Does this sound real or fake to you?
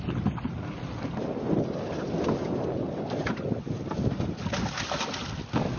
real